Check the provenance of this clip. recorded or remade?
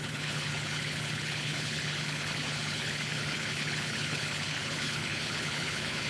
remade